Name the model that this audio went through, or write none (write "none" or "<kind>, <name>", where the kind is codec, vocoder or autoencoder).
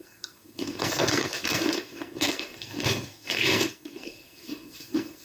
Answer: codec, SNAC